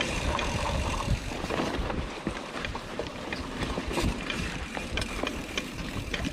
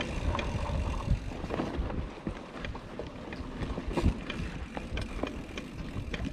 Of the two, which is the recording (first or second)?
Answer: second